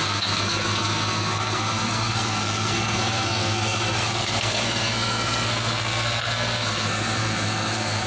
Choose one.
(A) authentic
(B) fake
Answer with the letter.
B